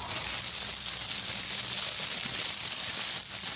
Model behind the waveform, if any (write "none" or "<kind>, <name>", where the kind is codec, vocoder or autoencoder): none